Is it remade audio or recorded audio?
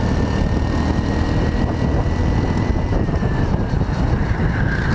recorded